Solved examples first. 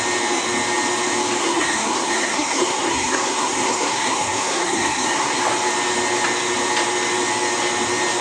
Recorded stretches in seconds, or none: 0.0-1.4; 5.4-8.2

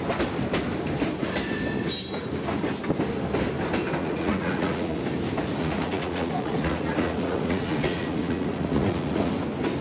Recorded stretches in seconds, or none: 0.0-4.0; 5.0-5.6; 9.3-9.8

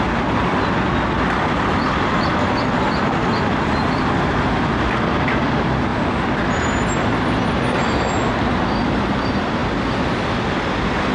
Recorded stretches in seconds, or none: 0.0-11.1

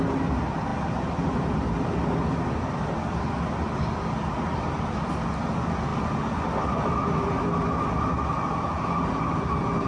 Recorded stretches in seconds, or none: 0.0-9.9

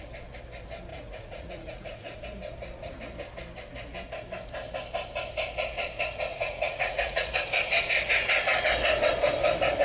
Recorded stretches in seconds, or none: 0.0-0.9; 2.2-6.3; 7.3-9.8

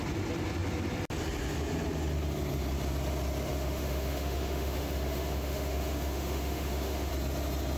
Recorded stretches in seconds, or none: 0.0-3.5; 7.1-7.8